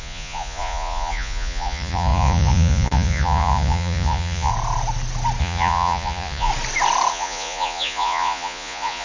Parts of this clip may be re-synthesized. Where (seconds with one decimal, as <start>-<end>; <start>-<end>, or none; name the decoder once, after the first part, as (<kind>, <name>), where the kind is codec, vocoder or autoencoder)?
0.0-4.5 (vocoder, Vocos); 5.4-6.5; 7.1-9.0